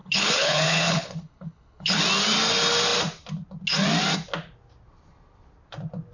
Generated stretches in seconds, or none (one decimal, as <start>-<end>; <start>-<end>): 0.0-2.0